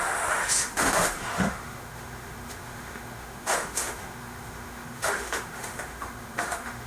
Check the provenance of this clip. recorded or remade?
remade